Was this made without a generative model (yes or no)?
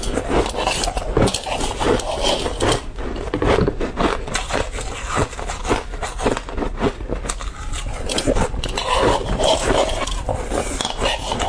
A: yes